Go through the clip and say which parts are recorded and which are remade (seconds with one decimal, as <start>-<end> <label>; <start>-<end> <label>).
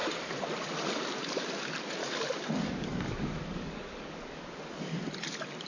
0.0-2.0 recorded; 2.0-4.9 remade; 4.9-5.7 recorded